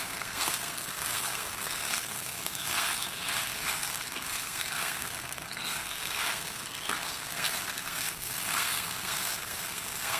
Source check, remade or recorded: remade